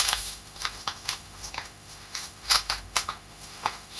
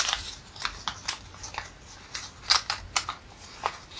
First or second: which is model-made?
first